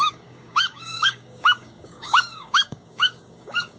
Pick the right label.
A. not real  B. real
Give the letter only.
A